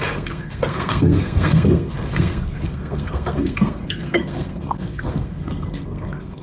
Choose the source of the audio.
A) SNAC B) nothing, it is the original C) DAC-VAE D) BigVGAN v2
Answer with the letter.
A